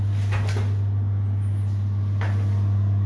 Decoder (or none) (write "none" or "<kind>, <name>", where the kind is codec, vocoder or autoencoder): none